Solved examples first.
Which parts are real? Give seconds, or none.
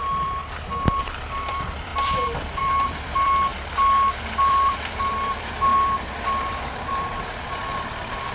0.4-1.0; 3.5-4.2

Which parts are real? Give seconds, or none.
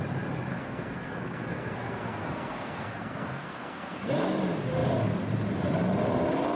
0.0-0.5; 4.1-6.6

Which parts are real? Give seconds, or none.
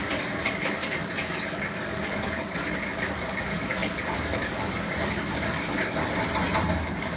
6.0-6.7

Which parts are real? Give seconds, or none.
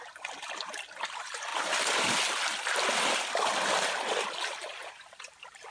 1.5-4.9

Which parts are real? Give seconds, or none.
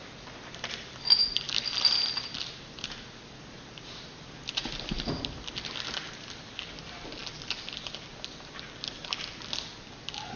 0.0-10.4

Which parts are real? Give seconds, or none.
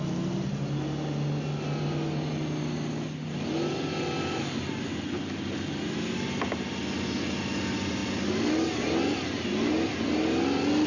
0.0-10.9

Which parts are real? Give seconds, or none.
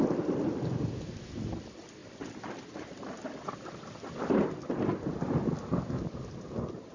0.0-6.9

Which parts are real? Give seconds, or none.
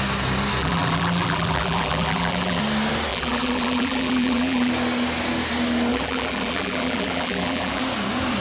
0.0-0.6; 2.6-3.1; 4.7-5.9; 7.8-8.4